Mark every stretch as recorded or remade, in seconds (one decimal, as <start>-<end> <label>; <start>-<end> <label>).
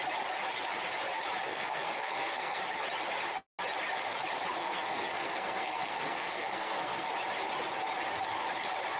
0.0-1.5 recorded; 1.5-2.6 remade; 2.6-4.6 recorded; 4.6-7.1 remade; 7.1-9.0 recorded